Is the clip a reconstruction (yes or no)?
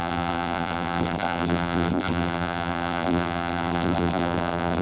yes